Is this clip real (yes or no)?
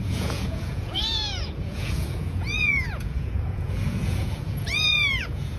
no